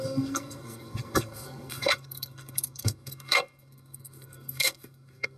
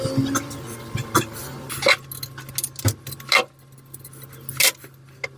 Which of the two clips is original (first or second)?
second